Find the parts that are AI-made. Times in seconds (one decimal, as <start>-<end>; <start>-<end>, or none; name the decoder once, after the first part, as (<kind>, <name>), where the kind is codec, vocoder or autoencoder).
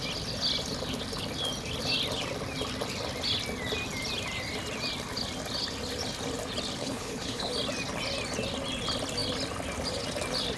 6.8-7.5 (codec, HILCodec)